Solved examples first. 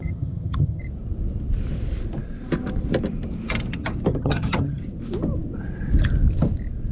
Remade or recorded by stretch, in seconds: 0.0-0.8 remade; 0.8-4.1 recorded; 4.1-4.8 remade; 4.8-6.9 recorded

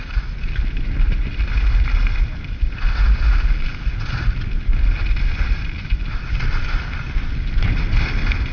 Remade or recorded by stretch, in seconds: 0.0-8.5 recorded

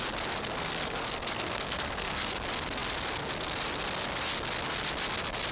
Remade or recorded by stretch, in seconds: 0.0-0.6 recorded; 0.6-2.3 remade; 2.3-5.5 recorded

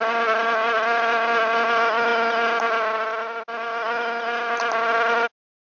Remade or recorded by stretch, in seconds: 0.0-5.7 recorded

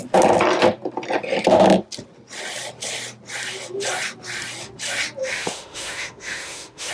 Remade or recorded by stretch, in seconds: 0.0-5.2 recorded; 5.2-6.9 remade

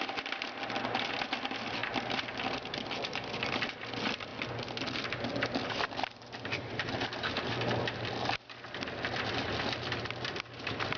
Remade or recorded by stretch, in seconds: 0.0-1.8 remade; 1.8-2.7 recorded; 2.7-4.3 remade; 4.3-5.7 recorded; 5.7-11.0 remade

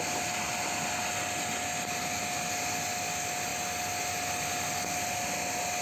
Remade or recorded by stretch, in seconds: 0.0-5.8 recorded

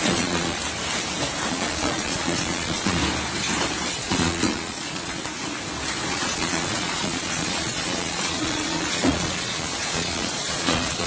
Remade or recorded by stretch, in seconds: 0.0-0.6 remade; 0.6-1.5 recorded; 1.5-3.0 remade; 3.0-3.9 recorded; 3.9-5.2 remade; 5.2-6.1 recorded; 6.1-11.1 remade